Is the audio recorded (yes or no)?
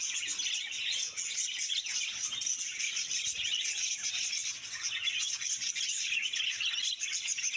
yes